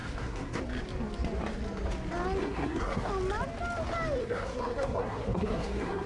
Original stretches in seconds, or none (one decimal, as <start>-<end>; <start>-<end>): 0.6-2.4; 3.1-4.2

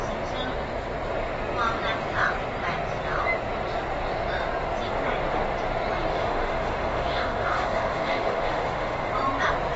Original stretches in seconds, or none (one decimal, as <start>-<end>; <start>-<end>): 0.0-6.1; 9.1-9.8

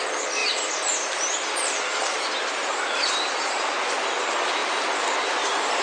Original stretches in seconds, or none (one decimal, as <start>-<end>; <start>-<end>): 0.0-0.4; 3.9-4.6

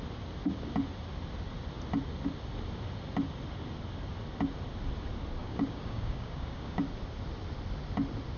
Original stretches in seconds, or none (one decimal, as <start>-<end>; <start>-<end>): 0.0-5.4; 6.8-8.4

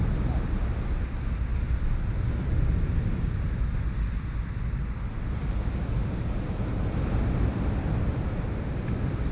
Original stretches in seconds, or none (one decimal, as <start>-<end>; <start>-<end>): 0.0-9.3

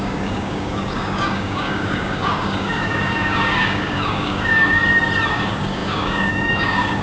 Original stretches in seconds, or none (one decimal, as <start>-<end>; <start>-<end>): 4.8-5.3